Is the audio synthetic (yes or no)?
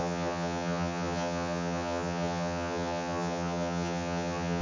yes